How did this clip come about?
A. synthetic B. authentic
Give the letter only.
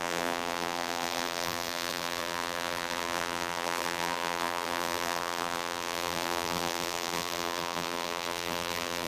A